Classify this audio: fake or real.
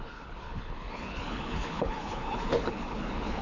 fake